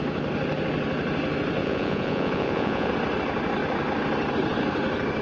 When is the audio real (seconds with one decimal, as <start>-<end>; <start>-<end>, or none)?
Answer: 0.0-1.6; 2.9-5.2